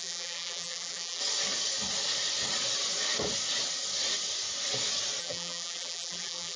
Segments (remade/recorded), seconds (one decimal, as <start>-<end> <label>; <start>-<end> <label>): 0.0-1.2 remade; 1.2-5.2 recorded; 5.2-6.6 remade